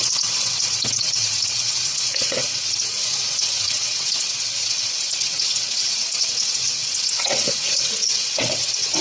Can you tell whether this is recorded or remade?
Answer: remade